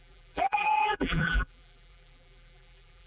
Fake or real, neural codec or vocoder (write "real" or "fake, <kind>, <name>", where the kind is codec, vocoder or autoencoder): fake, vocoder, BigVGAN v2